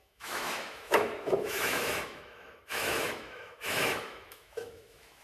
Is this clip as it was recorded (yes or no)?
no